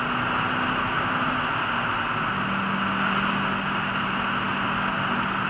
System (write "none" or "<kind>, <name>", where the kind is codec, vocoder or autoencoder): none